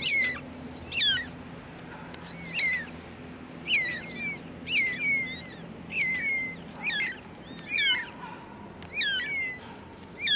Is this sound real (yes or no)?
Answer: yes